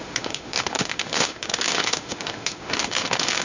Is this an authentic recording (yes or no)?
no